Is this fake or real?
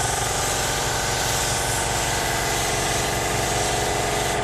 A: real